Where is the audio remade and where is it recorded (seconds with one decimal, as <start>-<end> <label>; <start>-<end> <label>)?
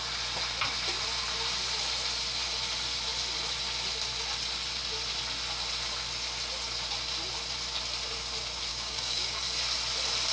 0.0-8.7 recorded; 8.7-9.4 remade; 9.4-10.3 recorded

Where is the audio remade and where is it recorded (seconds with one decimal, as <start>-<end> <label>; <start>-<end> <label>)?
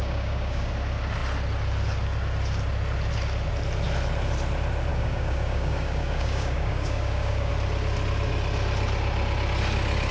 0.0-0.7 remade; 0.7-4.9 recorded; 4.9-7.5 remade; 7.5-10.1 recorded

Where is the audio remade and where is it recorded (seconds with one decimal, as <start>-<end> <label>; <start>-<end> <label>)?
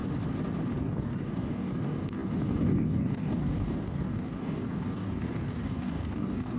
0.0-0.8 recorded; 0.8-6.6 remade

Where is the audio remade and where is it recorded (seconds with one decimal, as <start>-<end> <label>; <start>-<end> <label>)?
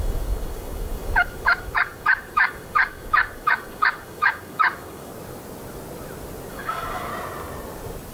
0.0-5.1 remade; 5.1-6.5 recorded; 6.5-7.1 remade; 7.1-8.1 recorded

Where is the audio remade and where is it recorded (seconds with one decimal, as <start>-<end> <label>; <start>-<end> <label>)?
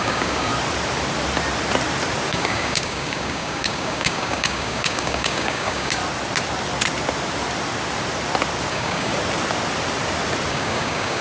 0.0-0.5 remade; 0.5-2.3 recorded; 2.3-6.0 remade; 6.0-8.7 recorded; 8.7-9.1 remade; 9.1-10.5 recorded; 10.5-11.2 remade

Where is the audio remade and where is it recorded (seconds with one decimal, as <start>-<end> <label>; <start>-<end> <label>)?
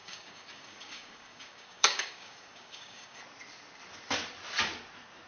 0.0-3.2 remade; 3.2-5.3 recorded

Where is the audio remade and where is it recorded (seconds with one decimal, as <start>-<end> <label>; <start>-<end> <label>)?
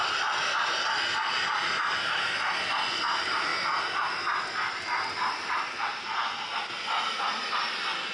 0.0-8.1 recorded